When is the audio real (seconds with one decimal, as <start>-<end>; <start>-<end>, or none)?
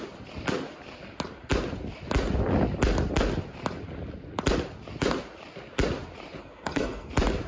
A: 0.0-6.4; 7.1-7.5